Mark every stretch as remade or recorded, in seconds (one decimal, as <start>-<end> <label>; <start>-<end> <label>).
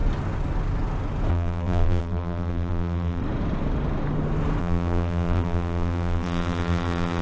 0.0-1.3 recorded; 1.3-3.2 remade; 3.2-4.6 recorded; 4.6-7.2 remade